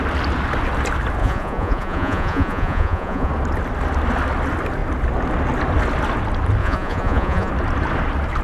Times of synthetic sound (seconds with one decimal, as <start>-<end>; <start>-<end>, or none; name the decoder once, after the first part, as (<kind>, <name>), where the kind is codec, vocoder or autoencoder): 1.2-3.3 (vocoder, Vocos); 6.6-7.5